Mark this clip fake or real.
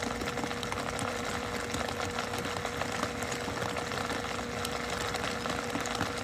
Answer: real